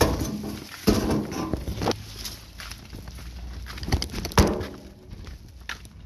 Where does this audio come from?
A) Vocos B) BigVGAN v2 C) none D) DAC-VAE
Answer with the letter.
C